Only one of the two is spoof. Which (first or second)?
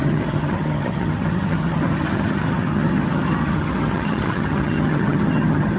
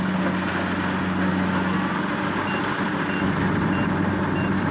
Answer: first